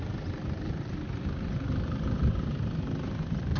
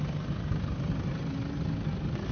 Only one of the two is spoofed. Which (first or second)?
first